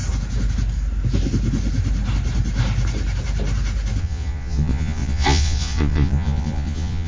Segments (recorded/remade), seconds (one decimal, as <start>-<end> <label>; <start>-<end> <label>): 0.0-4.0 recorded; 4.0-7.1 remade